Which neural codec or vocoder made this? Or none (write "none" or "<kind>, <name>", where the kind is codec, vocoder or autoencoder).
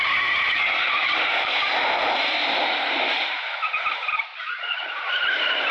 vocoder, BigVGAN v2